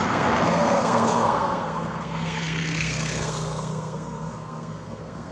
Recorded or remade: remade